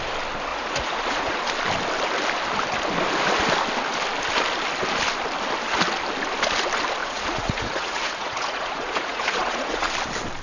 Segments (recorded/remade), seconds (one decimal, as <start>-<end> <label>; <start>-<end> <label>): 0.0-0.5 recorded; 0.5-1.4 remade; 1.4-7.0 recorded; 7.0-9.9 remade; 9.9-10.4 recorded